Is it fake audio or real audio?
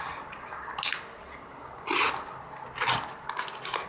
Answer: real